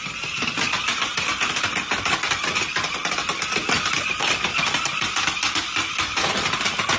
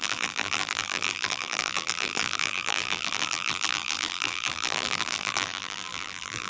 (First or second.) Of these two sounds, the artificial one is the second